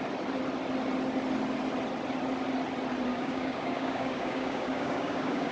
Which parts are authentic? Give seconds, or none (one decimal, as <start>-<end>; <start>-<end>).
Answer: 0.0-3.1